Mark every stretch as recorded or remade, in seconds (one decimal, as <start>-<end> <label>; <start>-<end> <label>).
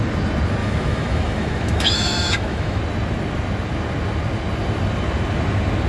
0.0-0.6 recorded; 0.6-2.8 remade; 2.8-5.9 recorded